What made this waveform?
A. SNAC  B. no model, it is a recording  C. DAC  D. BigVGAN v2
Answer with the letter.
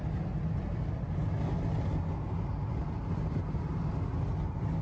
B